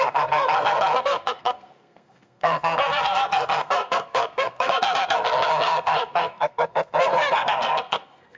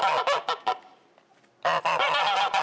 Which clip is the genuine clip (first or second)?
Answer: second